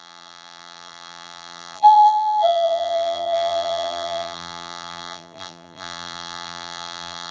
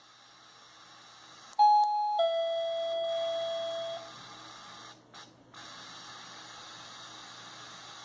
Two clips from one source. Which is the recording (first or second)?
second